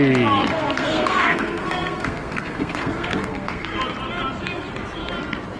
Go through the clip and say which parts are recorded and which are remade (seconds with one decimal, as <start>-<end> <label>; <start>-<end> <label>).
0.0-0.4 recorded; 0.4-3.8 remade; 3.8-5.6 recorded